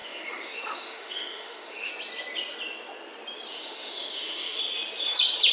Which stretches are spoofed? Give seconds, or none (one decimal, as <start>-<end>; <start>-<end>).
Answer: 0.0-1.9; 3.5-4.6